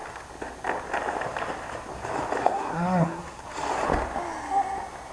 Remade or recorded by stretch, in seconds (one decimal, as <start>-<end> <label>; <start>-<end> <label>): 0.0-2.4 recorded; 2.4-3.4 remade; 3.4-5.1 recorded